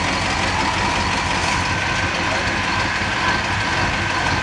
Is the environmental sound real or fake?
real